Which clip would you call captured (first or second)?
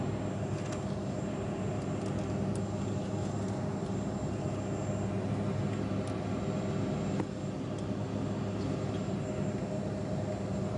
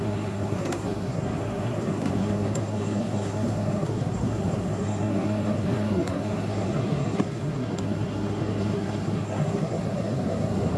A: first